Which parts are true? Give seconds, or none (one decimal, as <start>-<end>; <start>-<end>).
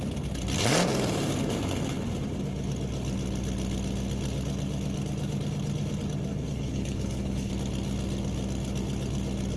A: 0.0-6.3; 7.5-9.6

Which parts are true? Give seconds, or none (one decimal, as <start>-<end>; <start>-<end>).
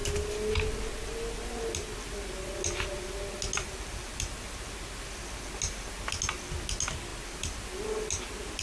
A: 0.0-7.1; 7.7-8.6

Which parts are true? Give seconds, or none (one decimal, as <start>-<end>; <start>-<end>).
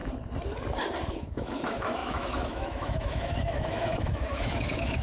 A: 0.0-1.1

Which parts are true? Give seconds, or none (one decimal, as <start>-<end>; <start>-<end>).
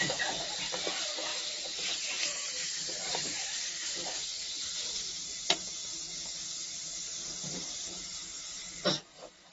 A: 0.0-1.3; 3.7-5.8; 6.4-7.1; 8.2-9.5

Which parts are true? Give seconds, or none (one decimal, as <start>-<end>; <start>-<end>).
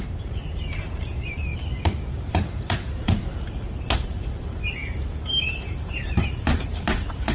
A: none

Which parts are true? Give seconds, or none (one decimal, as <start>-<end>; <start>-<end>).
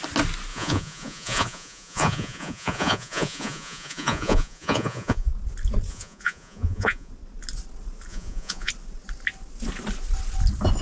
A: 0.0-0.5; 5.3-5.9; 7.1-8.1; 8.7-10.8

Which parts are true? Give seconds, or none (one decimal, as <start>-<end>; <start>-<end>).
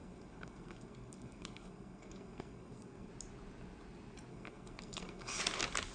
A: 3.1-4.3; 5.4-5.9